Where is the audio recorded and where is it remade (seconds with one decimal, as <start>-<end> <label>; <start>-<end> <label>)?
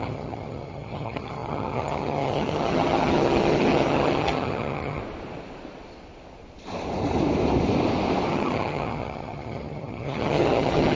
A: 0.0-5.0 remade; 5.0-8.3 recorded; 8.3-10.9 remade